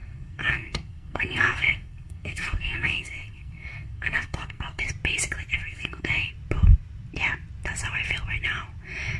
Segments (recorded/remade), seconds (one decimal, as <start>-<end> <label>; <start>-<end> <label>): 0.0-4.8 remade; 4.8-5.5 recorded; 5.5-6.3 remade; 6.3-9.2 recorded